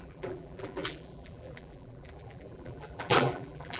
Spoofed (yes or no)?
yes